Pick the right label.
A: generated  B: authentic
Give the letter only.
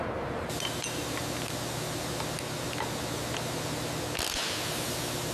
B